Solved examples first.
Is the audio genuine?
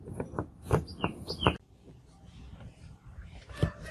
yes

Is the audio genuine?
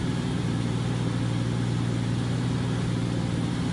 yes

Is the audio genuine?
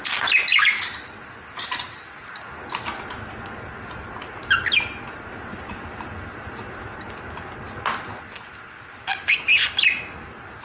yes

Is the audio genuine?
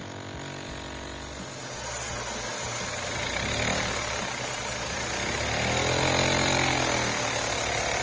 yes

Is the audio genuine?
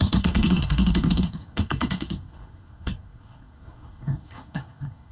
no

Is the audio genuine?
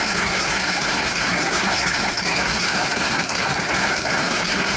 no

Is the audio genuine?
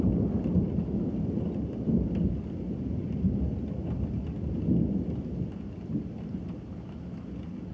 yes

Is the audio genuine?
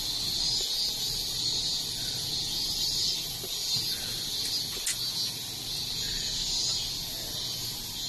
yes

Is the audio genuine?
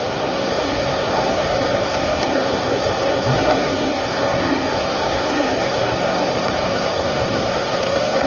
no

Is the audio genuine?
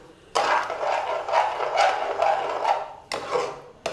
yes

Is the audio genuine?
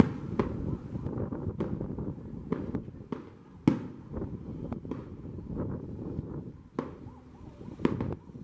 yes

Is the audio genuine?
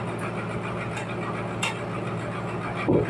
yes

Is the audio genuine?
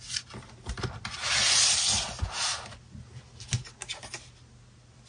yes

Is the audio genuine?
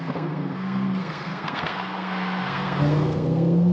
no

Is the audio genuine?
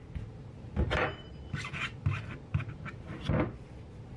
yes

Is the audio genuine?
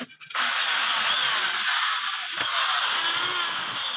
yes